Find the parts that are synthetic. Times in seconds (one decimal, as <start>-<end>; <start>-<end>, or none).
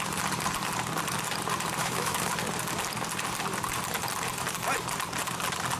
1.8-2.3